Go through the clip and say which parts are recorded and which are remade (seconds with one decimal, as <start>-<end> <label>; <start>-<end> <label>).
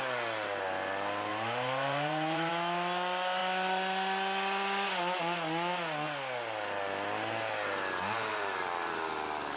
0.0-1.3 recorded; 1.3-2.5 remade; 2.5-8.3 recorded; 8.3-8.9 remade; 8.9-9.6 recorded